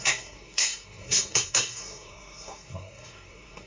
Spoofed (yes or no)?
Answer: yes